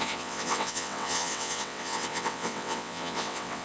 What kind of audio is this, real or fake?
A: fake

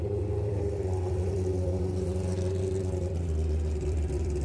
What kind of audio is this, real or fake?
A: fake